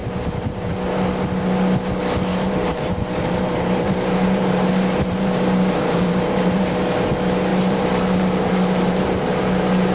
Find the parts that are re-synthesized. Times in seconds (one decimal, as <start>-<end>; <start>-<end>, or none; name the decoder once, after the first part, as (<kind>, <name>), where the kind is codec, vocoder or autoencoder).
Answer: 0.0-0.7 (vocoder, BigVGAN v2); 2.3-6.7; 7.5-9.2

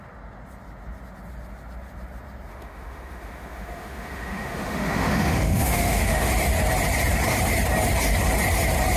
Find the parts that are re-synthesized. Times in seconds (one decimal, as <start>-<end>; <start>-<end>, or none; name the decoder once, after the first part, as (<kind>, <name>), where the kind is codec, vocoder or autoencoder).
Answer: 2.5-6.3 (autoencoder, DAC-VAE)

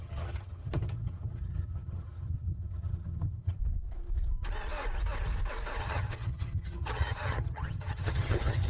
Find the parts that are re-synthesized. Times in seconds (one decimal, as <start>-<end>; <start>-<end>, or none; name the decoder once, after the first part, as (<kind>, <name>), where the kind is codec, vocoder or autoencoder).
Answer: 0.0-3.6 (vocoder, HiFi-GAN); 5.8-8.7

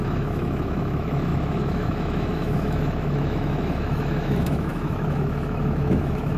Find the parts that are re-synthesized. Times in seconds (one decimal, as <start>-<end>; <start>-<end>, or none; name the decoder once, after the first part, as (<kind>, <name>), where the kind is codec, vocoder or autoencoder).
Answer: 0.0-6.4 (autoencoder, DAC-VAE)

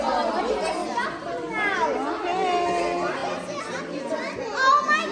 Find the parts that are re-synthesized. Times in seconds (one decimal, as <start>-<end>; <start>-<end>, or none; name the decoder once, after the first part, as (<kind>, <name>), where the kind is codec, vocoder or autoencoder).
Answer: none